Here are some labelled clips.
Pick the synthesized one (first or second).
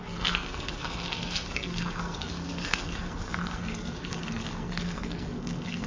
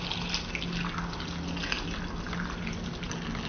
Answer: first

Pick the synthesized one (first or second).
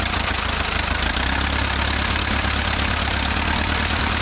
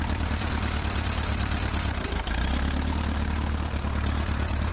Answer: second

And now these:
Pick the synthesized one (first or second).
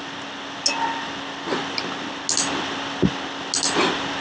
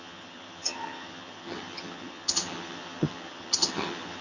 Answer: second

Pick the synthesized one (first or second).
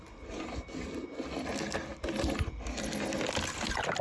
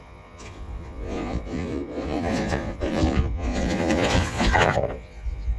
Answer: second